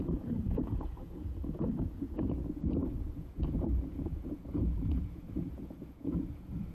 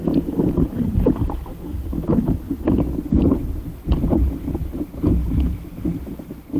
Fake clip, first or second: first